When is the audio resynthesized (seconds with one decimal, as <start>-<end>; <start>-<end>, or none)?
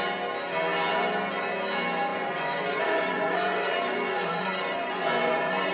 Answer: 2.1-5.7